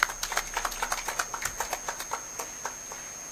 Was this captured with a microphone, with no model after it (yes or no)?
yes